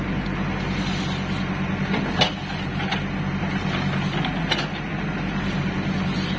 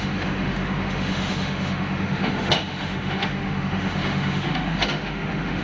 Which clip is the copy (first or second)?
second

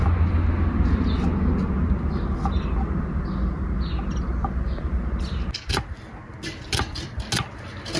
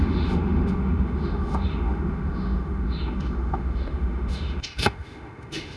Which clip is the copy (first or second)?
second